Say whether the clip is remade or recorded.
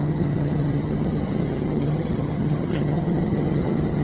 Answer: remade